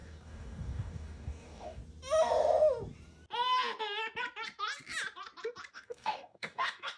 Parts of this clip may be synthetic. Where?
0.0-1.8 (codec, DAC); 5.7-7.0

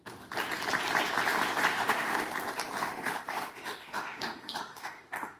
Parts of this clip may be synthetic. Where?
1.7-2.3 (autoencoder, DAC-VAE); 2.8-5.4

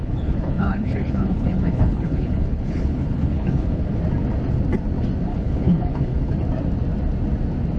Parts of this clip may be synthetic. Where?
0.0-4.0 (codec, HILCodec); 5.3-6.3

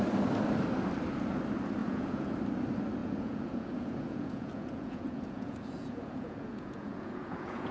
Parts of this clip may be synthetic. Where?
1.8-2.3 (vocoder, Vocos); 3.0-7.7

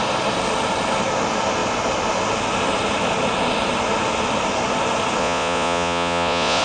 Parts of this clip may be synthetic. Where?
5.2-6.6 (vocoder, Vocos)

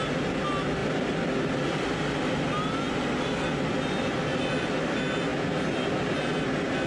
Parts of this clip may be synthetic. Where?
none